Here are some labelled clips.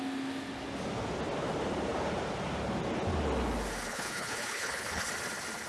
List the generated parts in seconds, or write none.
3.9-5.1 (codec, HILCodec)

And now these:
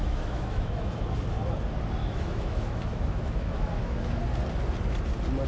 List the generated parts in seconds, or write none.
0.0-0.9 (autoencoder, DAC-VAE); 2.0-4.2